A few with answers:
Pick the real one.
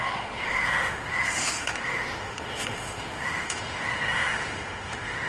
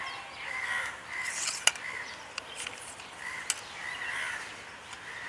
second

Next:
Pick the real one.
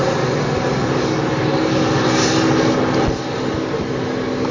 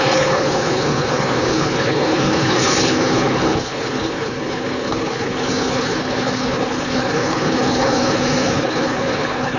first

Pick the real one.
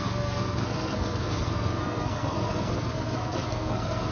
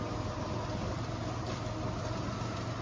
second